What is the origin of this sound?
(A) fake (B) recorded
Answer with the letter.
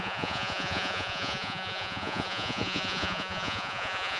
A